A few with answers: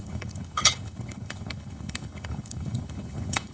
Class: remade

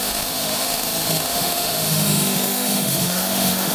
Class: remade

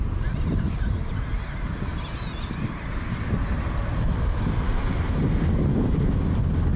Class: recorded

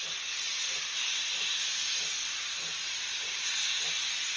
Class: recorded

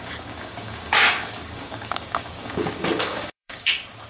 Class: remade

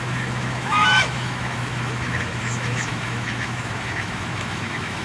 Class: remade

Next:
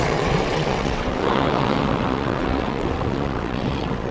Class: remade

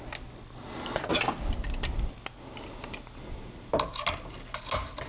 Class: recorded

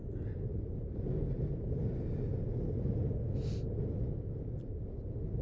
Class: recorded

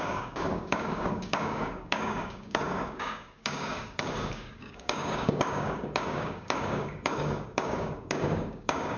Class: remade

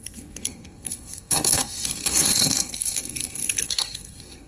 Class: remade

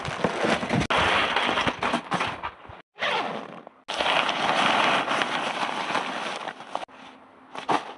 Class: recorded